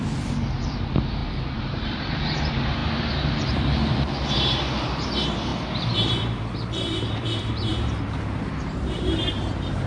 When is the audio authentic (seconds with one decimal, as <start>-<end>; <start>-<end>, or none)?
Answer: none

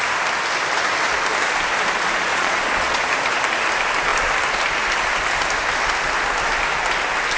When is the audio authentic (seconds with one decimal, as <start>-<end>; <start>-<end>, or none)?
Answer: 0.0-2.3; 3.1-7.4

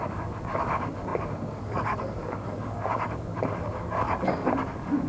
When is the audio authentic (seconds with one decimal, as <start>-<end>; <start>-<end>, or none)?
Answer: none

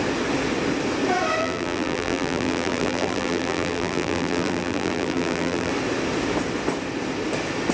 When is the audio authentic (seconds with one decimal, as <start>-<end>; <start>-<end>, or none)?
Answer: 0.0-1.4; 5.7-7.7

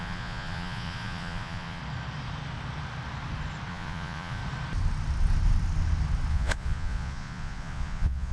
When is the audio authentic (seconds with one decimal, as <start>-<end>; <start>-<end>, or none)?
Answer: 1.8-3.7; 4.4-6.3

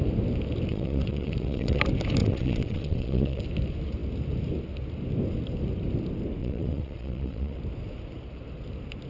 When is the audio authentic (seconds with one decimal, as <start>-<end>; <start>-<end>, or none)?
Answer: 0.0-0.7; 1.8-2.2; 3.4-6.4; 7.6-9.1